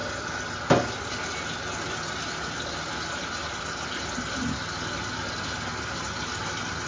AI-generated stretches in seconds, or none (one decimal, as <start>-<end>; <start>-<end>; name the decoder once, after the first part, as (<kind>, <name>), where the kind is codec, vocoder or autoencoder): none